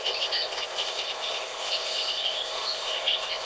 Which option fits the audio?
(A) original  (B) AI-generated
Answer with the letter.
B